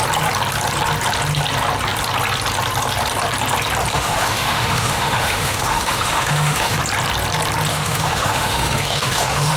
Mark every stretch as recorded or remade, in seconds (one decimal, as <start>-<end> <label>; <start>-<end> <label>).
0.0-3.9 recorded; 3.9-6.8 remade; 6.8-7.7 recorded; 7.7-9.6 remade

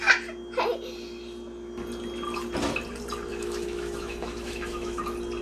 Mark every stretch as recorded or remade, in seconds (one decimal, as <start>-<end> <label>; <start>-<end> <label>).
0.0-3.3 recorded; 3.3-5.0 remade; 5.0-5.4 recorded